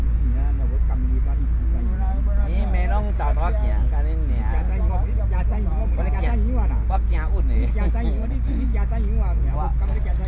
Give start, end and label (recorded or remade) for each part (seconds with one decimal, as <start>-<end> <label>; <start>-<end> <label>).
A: 0.0-10.3 recorded